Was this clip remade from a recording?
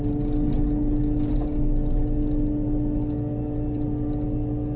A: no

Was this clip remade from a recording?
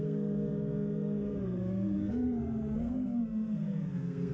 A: yes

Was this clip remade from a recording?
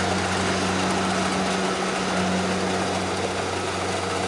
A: no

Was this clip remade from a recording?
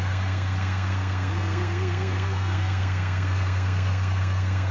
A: yes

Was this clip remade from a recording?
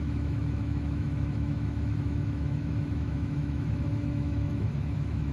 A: yes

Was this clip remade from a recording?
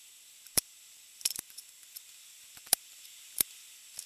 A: yes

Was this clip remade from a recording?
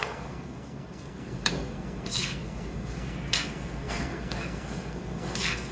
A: yes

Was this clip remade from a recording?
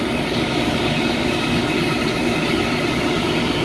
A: yes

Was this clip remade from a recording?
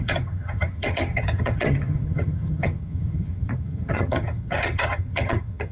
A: yes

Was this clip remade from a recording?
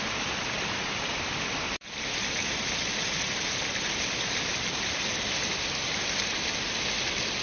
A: no